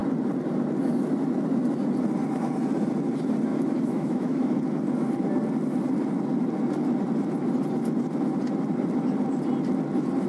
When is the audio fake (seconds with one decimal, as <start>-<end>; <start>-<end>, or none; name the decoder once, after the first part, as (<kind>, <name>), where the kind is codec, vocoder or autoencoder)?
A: 3.5-4.5 (autoencoder, DAC-VAE)